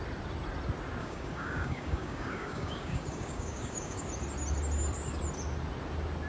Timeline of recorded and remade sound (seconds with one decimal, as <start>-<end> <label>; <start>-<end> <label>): 0.0-1.0 recorded; 1.0-4.1 remade; 4.1-6.3 recorded

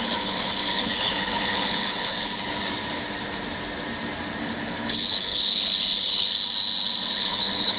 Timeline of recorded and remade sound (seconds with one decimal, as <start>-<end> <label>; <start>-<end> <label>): 0.0-2.3 remade; 2.3-4.4 recorded; 4.4-6.3 remade; 6.3-7.1 recorded; 7.1-7.8 remade

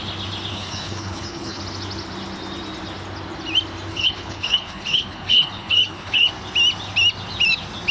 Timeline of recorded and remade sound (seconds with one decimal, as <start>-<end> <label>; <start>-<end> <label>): 0.0-0.5 recorded; 0.5-1.6 remade; 1.6-3.9 recorded; 3.9-6.3 remade; 6.3-7.9 recorded

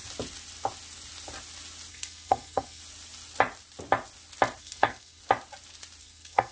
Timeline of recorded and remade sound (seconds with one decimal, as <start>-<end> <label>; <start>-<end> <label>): 0.0-1.9 recorded; 1.9-2.8 remade; 2.8-4.6 recorded; 4.6-5.2 remade; 5.2-6.0 recorded; 6.0-6.5 remade